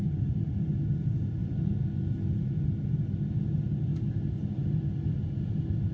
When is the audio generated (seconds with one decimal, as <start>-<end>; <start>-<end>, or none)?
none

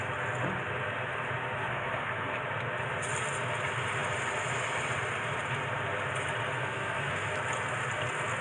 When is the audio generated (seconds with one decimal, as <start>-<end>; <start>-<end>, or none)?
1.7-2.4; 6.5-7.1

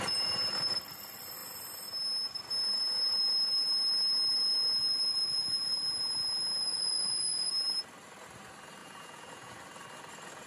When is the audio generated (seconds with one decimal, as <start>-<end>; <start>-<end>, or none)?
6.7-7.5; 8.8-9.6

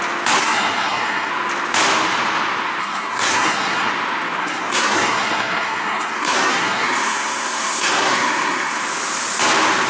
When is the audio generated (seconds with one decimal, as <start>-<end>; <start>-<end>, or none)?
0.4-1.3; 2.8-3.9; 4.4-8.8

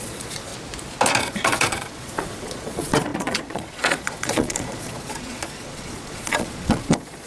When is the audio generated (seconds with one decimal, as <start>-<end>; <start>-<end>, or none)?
0.0-0.5; 1.2-7.3

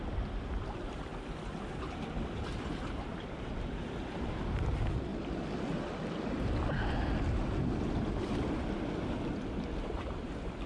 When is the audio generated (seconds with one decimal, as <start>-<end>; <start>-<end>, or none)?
none

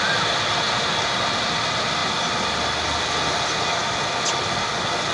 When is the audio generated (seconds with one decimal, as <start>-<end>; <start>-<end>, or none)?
none

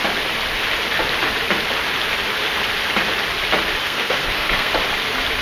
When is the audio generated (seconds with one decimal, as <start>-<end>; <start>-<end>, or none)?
3.8-4.7